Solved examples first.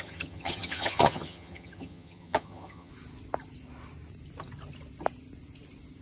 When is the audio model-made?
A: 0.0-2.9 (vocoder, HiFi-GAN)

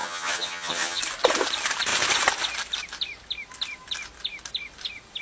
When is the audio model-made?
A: 0.0-1.0 (vocoder, HiFi-GAN)